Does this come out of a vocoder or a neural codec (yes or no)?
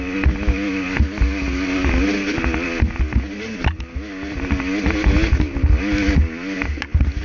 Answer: no